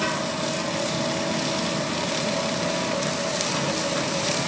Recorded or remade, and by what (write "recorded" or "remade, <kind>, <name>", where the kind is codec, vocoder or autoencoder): recorded